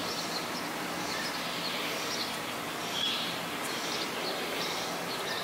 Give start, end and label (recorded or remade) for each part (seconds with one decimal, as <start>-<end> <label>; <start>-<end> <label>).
0.0-2.8 recorded; 2.8-4.7 remade; 4.7-5.4 recorded